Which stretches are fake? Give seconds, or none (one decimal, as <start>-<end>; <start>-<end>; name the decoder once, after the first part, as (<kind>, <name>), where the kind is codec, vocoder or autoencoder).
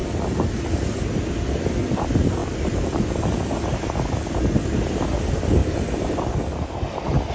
2.4-3.4 (vocoder, BigVGAN v2)